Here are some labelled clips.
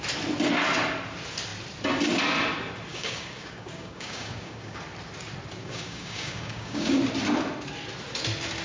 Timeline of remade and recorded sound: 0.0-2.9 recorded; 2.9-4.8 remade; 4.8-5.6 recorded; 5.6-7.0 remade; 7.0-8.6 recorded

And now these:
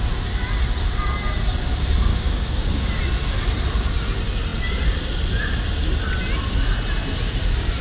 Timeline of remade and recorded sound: 0.0-2.1 recorded; 2.1-3.0 remade; 3.0-7.8 recorded